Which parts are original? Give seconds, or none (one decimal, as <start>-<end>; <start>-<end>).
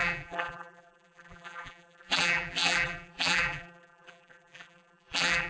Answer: none